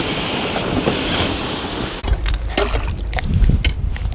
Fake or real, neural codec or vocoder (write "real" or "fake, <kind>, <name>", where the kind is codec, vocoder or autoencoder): real